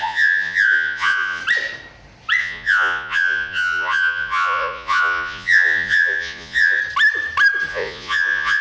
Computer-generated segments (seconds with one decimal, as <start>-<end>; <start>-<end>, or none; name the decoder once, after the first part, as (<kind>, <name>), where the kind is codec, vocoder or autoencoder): 0.0-1.4 (vocoder, Vocos); 2.4-6.8; 7.7-8.6

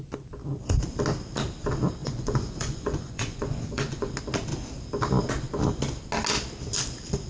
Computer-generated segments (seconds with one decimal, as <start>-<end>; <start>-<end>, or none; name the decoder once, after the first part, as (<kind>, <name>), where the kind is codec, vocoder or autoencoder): 2.0-4.1 (vocoder, Vocos)

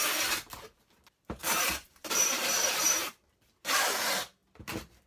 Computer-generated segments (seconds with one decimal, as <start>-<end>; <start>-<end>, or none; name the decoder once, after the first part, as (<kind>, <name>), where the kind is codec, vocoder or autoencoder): 1.4-3.1 (vocoder, BigVGAN v2)

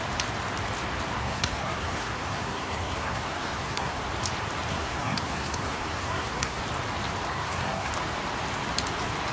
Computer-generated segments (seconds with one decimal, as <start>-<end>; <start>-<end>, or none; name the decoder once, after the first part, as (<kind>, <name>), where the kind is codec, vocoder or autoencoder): 1.2-4.0 (codec, SNAC); 4.7-6.6; 7.3-7.9

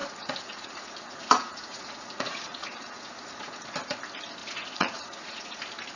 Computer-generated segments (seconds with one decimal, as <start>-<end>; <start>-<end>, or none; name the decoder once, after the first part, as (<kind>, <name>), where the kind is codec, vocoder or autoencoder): 0.0-3.6 (vocoder, Vocos); 4.4-5.6